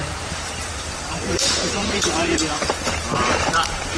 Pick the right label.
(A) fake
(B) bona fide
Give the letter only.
A